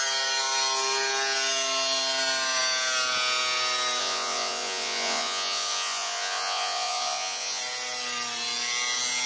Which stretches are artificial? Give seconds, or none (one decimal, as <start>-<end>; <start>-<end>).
4.0-7.6